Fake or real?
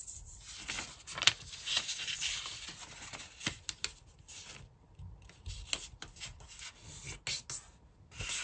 real